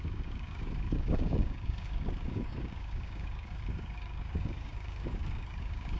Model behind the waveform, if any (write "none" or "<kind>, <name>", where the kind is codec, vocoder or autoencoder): codec, DAC